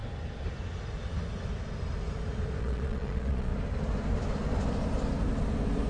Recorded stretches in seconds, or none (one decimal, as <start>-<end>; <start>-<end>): 0.0-2.6; 3.5-5.9